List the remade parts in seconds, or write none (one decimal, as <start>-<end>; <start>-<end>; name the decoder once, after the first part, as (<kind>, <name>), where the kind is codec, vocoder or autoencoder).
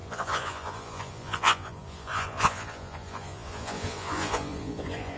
0.0-5.2 (vocoder, Vocos)